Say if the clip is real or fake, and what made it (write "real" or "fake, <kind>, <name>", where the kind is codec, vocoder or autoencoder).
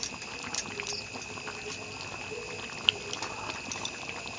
real